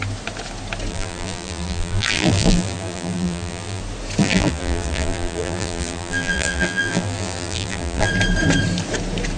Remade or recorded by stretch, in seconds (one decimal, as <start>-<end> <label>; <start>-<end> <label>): 0.0-0.9 recorded; 0.9-3.8 remade; 3.8-4.2 recorded; 4.2-8.1 remade; 8.1-9.4 recorded